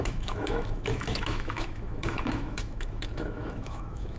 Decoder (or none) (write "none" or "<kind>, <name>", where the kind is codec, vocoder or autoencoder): autoencoder, DAC-VAE